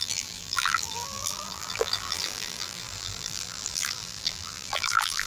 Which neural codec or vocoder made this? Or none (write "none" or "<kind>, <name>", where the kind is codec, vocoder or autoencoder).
vocoder, BigVGAN v2